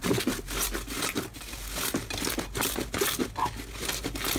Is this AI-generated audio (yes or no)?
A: no